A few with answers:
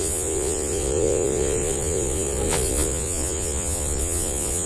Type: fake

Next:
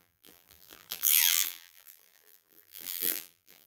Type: fake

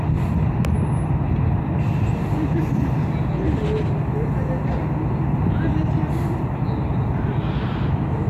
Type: real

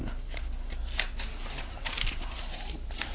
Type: real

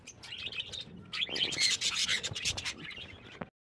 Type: real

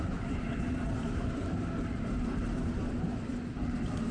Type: real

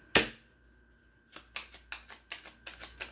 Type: real